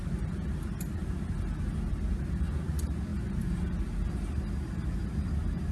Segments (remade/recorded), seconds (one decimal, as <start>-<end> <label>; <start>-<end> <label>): 0.0-5.7 recorded